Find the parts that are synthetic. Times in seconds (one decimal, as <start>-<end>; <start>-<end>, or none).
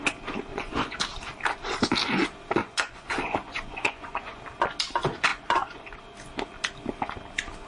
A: 0.5-1.0; 2.6-4.4; 5.3-6.0